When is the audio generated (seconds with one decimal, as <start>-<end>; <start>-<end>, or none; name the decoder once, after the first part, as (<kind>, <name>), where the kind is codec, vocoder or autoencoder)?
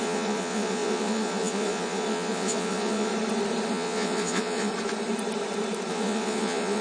0.0-3.1 (vocoder, Vocos); 3.7-4.7; 5.9-6.8